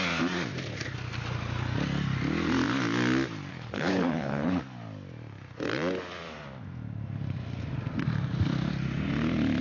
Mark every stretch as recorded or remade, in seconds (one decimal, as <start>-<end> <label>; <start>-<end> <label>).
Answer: 0.0-3.5 recorded; 3.5-4.6 remade; 4.6-9.6 recorded